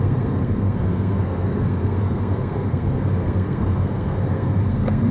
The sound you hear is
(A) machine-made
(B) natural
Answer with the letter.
A